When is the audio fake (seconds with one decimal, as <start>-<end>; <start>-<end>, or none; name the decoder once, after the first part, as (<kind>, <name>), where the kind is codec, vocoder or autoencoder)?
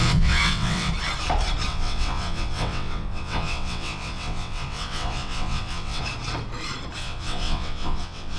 0.0-0.9 (vocoder, WaveNeXt); 1.7-6.0; 7.0-8.4